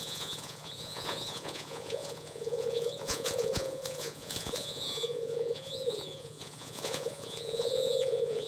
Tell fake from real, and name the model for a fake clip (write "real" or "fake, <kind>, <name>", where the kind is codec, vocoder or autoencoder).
fake, vocoder, Vocos